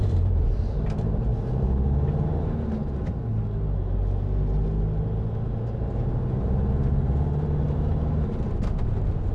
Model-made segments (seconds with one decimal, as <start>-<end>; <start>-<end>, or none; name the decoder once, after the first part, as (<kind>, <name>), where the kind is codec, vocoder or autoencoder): 0.0-1.3 (vocoder, BigVGAN v2); 6.4-9.3